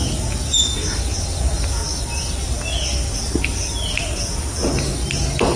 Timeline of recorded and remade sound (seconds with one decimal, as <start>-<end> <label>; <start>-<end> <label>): 0.0-1.8 remade; 1.8-5.6 recorded